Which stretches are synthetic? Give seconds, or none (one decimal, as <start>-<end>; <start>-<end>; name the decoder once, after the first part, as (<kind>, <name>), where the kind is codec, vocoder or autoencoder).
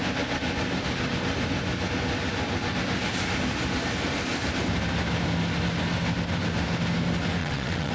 7.4-7.9 (vocoder, WaveNeXt)